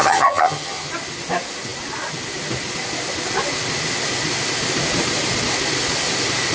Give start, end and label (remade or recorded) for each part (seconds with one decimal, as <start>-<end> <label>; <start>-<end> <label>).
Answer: 0.0-0.9 remade; 0.9-6.5 recorded